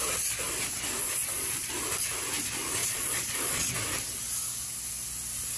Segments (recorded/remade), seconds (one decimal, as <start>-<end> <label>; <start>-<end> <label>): 0.0-1.0 recorded; 1.0-1.7 remade; 1.7-2.8 recorded; 2.8-3.7 remade; 3.7-5.6 recorded